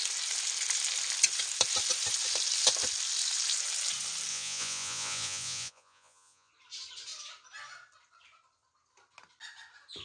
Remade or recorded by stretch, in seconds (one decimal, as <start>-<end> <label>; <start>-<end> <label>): 0.0-4.3 recorded; 4.3-6.5 remade; 6.5-10.0 recorded